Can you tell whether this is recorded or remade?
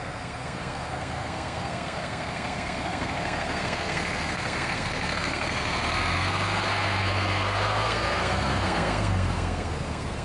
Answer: remade